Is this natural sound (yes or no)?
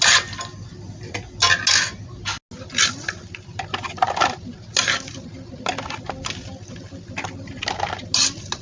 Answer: yes